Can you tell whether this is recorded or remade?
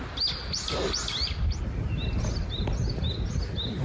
recorded